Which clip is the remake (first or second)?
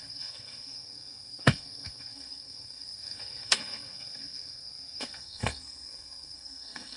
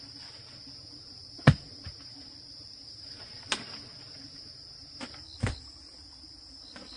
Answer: first